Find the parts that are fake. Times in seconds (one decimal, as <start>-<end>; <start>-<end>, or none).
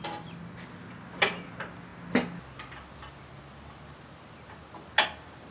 none